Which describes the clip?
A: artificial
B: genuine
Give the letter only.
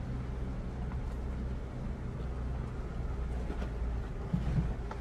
B